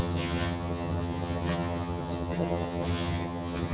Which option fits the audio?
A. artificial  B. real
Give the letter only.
A